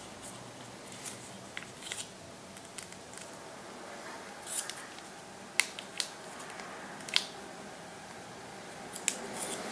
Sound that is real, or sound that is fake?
real